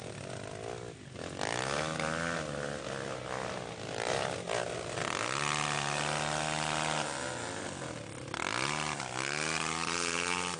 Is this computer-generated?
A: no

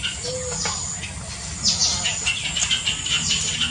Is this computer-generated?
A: no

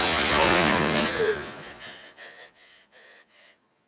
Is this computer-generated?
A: yes